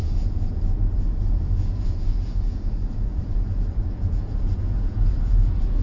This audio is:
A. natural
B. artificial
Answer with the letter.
B